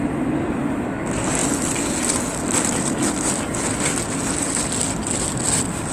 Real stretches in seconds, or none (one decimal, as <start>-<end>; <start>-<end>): 0.0-5.9